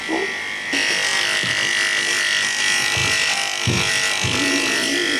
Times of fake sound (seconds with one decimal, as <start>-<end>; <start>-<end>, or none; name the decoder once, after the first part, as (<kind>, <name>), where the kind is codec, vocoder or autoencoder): none